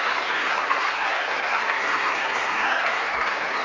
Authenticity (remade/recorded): remade